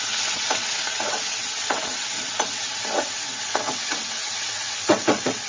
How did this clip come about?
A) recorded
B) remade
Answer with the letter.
B